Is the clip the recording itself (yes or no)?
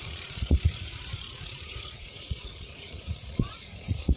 no